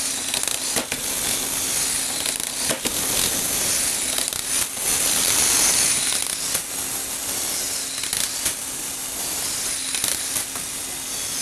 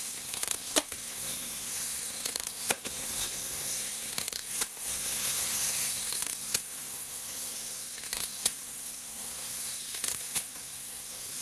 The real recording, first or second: first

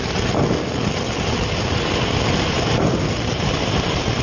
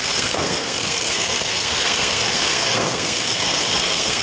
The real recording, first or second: first